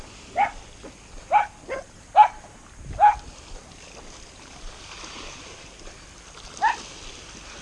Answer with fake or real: real